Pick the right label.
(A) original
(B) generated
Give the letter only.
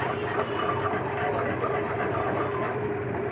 B